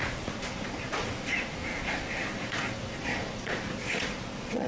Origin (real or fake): fake